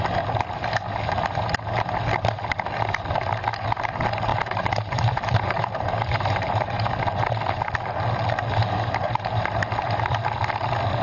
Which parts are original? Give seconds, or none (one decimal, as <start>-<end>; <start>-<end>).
0.0-4.3; 6.9-11.0